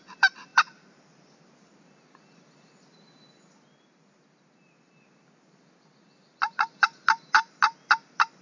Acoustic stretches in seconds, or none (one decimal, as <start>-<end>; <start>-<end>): 0.0-8.4